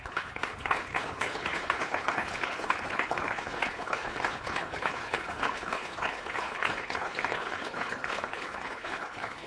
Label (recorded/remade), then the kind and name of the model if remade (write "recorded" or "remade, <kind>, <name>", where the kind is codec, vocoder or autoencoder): remade, codec, HILCodec